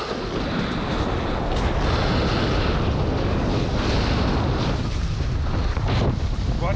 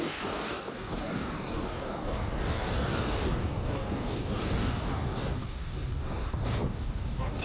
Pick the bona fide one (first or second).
first